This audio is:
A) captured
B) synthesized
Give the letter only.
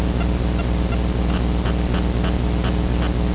A